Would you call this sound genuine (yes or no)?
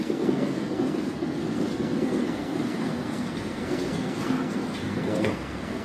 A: no